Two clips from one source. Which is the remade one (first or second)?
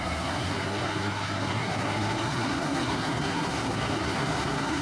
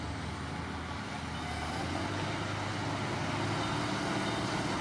first